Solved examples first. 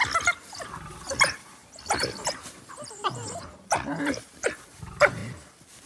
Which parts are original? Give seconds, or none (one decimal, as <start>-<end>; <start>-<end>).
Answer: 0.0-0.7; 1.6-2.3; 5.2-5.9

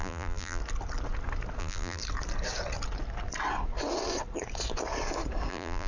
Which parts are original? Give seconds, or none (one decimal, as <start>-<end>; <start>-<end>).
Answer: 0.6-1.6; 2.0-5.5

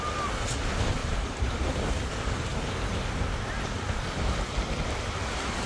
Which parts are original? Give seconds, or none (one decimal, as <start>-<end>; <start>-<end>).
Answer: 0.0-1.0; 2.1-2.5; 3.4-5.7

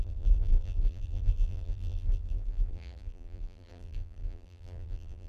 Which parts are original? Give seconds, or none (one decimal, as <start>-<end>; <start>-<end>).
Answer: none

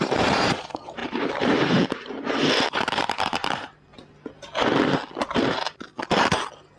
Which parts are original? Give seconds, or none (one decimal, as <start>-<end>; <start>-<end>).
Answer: 3.9-5.3; 5.9-6.8

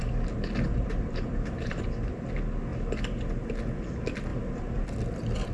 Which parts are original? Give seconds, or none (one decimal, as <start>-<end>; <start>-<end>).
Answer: 0.0-0.7; 2.3-4.3; 4.8-5.5

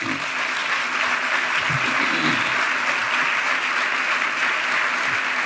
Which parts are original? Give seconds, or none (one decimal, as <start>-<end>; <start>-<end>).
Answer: 0.0-5.5